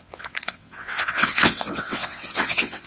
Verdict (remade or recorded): remade